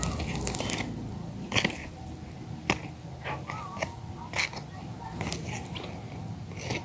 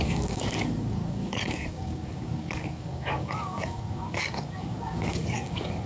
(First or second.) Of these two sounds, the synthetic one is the second